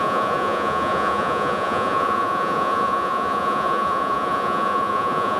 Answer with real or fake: fake